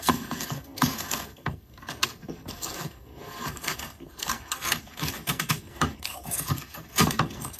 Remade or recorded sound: remade